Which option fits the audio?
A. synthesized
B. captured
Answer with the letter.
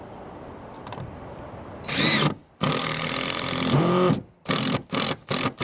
A